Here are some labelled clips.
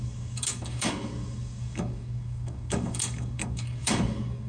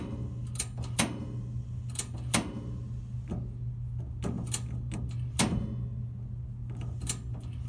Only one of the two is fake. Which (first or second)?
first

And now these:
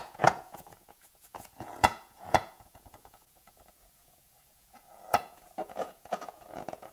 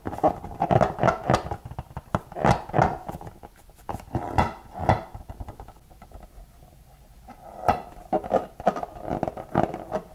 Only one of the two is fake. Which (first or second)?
first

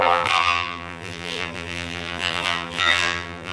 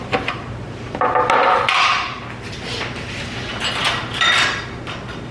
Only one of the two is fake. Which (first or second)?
first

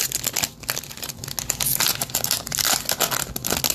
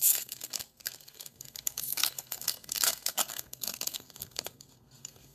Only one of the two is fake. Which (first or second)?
second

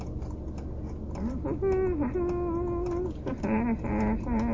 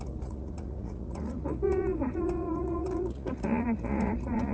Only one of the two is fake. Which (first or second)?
second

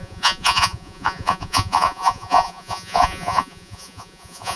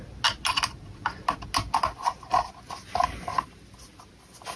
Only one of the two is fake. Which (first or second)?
first